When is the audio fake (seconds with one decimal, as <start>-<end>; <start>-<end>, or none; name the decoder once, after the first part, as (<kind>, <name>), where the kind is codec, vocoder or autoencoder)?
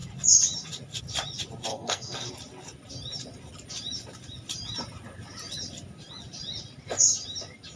1.7-2.3 (codec, SNAC)